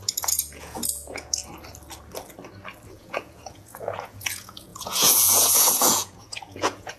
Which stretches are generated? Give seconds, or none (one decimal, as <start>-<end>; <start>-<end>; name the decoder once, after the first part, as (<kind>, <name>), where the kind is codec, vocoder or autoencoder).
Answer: 0.0-1.4 (vocoder, Vocos); 2.9-7.0